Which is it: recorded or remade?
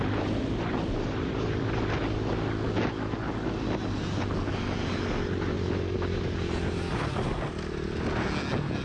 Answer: recorded